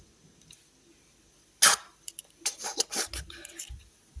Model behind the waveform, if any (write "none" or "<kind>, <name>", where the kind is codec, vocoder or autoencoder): none